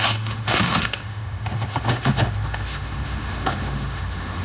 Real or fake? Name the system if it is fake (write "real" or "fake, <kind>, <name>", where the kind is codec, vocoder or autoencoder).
fake, autoencoder, DAC-VAE